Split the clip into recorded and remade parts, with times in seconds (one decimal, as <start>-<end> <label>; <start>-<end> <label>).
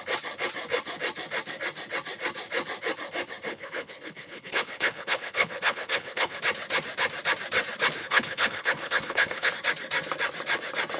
0.0-3.5 recorded; 3.5-6.4 remade; 6.4-8.0 recorded; 8.0-9.5 remade; 9.5-11.0 recorded